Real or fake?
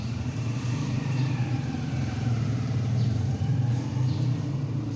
fake